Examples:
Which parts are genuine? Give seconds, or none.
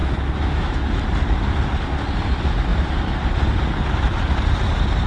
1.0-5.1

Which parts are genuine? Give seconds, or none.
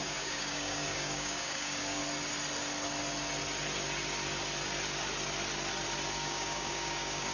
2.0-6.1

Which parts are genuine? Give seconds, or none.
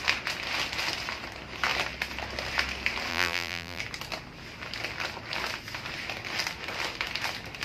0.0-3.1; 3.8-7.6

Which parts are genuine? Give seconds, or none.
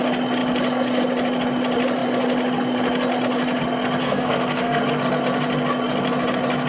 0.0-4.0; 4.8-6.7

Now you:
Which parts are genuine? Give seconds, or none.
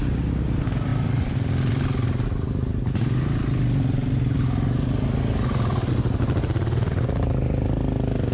0.0-8.3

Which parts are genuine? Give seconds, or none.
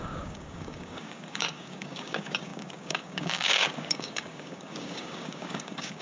none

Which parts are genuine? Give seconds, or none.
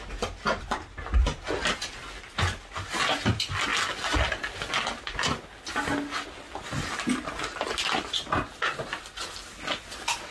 0.0-10.3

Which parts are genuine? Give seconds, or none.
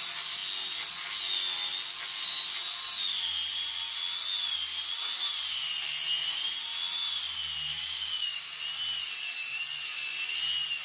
0.0-7.8; 8.6-10.8